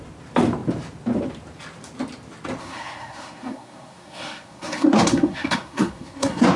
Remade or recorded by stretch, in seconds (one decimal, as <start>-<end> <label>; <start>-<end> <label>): 0.0-2.6 recorded; 2.6-6.6 remade